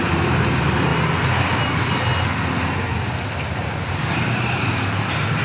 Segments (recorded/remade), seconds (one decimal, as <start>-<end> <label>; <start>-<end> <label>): 0.0-0.9 remade; 0.9-1.6 recorded; 1.6-2.1 remade; 2.1-3.4 recorded; 3.4-5.4 remade